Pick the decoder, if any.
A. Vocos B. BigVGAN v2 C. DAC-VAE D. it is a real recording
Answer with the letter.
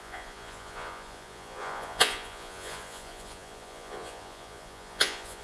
A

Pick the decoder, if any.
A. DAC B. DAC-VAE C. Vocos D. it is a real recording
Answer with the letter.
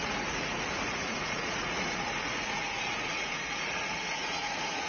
C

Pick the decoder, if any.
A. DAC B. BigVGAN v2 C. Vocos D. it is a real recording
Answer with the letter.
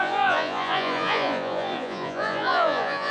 C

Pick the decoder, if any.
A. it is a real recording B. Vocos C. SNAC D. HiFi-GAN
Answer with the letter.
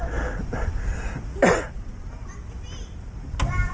A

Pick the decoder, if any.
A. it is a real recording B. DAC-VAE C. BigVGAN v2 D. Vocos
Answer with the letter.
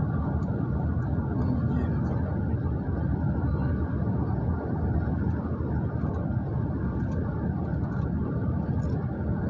A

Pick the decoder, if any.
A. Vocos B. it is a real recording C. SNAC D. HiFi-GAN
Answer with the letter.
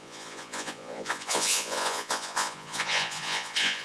A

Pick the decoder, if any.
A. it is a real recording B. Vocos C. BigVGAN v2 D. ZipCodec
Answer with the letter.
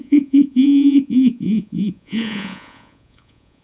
B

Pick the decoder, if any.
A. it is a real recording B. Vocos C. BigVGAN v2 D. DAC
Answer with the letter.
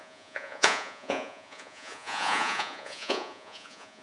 B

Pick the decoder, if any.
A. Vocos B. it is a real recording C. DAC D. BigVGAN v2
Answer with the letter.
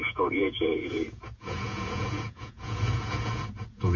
A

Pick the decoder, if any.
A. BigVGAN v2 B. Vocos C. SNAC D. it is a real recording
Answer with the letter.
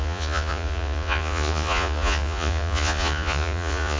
B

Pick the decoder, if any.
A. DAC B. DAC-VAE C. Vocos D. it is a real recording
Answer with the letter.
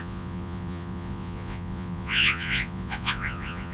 C